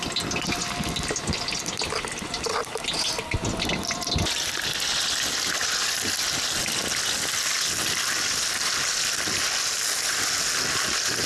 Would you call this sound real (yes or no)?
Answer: yes